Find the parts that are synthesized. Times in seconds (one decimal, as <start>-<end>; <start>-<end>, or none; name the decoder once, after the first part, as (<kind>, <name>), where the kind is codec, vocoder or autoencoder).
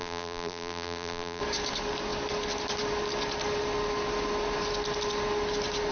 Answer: 0.0-1.4 (vocoder, BigVGAN v2)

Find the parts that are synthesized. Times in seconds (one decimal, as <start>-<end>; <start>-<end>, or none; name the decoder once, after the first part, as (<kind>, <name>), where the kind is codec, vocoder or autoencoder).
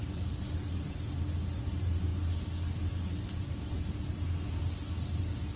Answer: none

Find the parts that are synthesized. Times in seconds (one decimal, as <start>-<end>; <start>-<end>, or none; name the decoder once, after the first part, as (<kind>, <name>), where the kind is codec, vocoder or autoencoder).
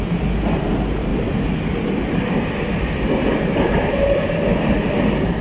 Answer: 1.1-4.3 (vocoder, BigVGAN v2)